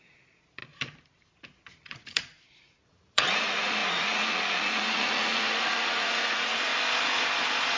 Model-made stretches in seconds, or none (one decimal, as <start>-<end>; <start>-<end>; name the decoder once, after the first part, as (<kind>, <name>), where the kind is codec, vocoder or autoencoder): 0.0-0.6 (vocoder, Vocos); 1.7-6.7